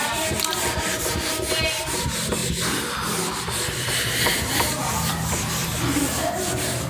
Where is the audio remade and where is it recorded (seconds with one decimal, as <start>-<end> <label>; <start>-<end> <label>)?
0.0-2.4 remade; 2.4-4.0 recorded; 4.0-5.6 remade; 5.6-6.2 recorded; 6.2-6.9 remade